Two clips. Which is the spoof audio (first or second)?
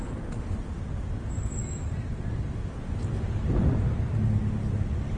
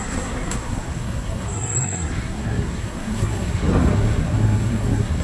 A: second